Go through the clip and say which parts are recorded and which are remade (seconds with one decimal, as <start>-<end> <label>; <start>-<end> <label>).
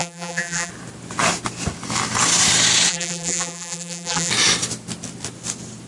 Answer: 0.0-0.7 remade; 0.7-2.9 recorded; 2.9-4.3 remade; 4.3-5.9 recorded